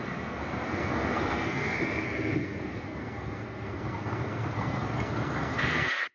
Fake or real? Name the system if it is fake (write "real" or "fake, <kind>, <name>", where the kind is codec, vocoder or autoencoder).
fake, codec, SNAC